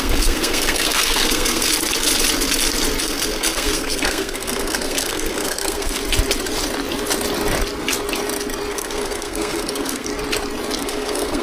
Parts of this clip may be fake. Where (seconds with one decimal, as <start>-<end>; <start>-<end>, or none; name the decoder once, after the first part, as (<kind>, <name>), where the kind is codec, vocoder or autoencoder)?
0.0-1.7 (codec, SNAC); 3.0-6.0; 8.7-10.1; 10.8-11.4